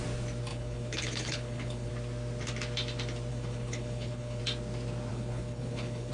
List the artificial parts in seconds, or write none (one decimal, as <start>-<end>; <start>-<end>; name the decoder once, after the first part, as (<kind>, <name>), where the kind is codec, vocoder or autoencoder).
0.5-1.9 (codec, HILCodec); 3.3-4.4; 5.1-6.1